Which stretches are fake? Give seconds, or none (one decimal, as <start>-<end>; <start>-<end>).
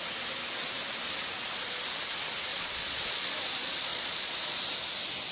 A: 2.5-3.0; 3.9-4.6